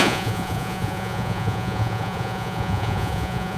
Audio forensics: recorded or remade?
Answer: remade